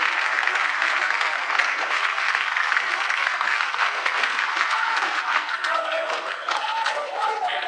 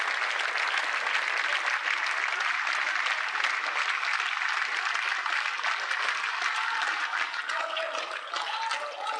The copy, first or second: first